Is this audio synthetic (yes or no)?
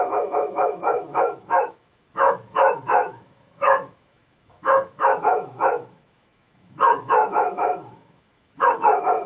yes